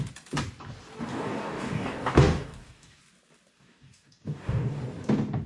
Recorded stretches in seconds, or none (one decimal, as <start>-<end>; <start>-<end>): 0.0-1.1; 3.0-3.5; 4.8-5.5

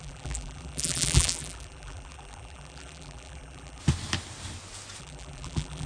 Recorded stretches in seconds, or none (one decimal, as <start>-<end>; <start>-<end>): 3.8-5.0

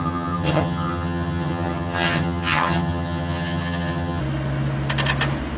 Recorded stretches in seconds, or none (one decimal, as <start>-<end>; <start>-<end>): 4.2-5.6

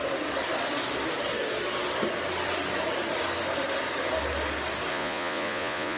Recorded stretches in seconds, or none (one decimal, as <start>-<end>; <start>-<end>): 0.0-4.9

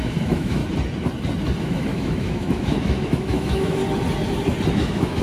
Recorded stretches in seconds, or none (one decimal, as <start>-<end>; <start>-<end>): 0.6-1.6; 3.8-4.7

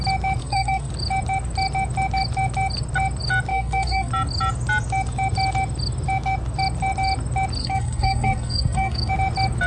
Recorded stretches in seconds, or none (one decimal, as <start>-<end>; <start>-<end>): 0.0-0.4; 0.9-3.5; 4.1-7.6; 9.1-9.7